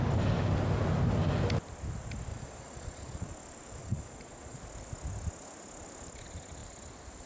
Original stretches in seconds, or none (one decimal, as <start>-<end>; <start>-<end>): 0.0-2.3; 3.3-3.8; 4.6-7.3